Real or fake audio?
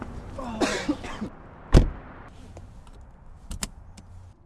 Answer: fake